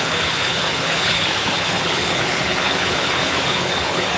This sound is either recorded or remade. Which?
remade